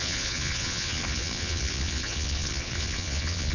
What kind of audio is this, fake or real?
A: fake